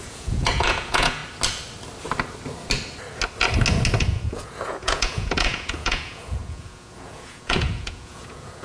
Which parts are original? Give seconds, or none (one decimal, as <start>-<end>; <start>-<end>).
1.2-4.0